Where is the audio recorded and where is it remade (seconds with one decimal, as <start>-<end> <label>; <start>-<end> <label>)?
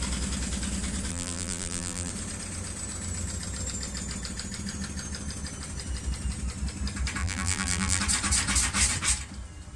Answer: 0.0-1.1 recorded; 1.1-2.1 remade; 2.1-7.2 recorded; 7.2-8.0 remade; 8.0-9.8 recorded